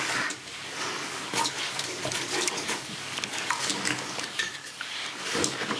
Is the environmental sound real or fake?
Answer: fake